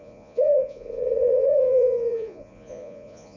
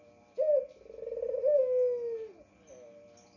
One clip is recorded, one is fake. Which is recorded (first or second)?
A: second